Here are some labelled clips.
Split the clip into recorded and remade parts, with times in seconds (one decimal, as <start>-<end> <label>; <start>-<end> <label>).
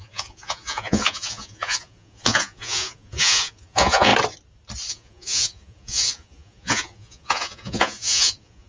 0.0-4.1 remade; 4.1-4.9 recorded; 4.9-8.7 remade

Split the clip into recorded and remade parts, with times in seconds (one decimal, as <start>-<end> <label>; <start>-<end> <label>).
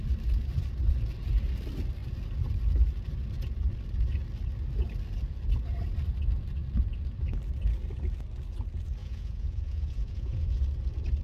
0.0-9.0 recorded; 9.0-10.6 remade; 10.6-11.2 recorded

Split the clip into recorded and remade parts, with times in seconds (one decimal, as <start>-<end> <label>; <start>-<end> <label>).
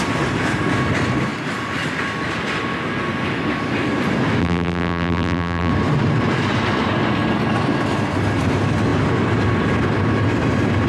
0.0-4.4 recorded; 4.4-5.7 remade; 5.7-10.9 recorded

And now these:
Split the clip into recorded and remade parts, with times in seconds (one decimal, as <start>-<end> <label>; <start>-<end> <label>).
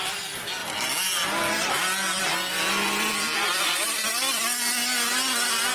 0.0-5.7 recorded